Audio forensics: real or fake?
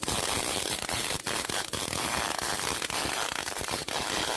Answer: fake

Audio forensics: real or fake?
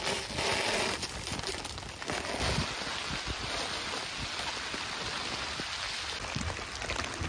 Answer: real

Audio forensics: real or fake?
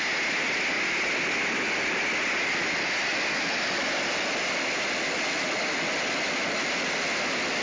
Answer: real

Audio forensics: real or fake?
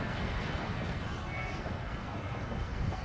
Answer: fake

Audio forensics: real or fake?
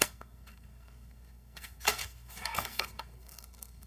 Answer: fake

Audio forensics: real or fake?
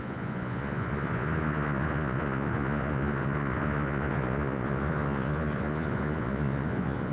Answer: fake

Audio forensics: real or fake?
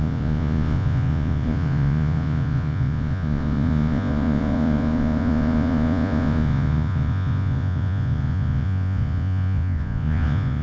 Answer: fake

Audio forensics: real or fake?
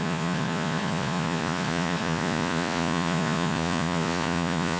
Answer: fake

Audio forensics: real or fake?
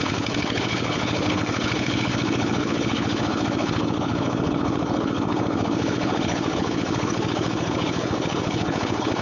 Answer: fake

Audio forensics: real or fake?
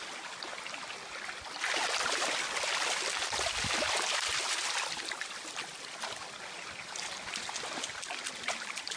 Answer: real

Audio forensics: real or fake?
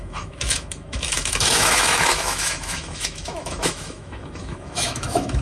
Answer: fake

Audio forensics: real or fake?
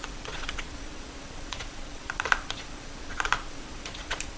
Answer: fake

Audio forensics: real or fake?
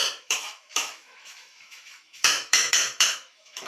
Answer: fake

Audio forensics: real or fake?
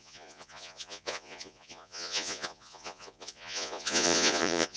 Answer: fake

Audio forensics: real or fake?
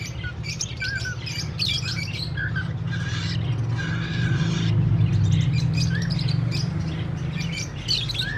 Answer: real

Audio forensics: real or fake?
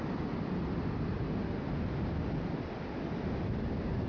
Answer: real